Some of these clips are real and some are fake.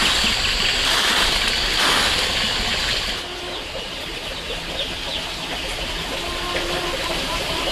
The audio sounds real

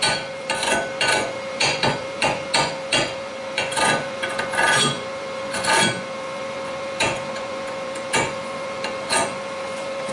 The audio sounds fake